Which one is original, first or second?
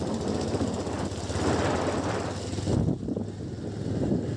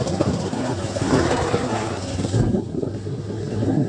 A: first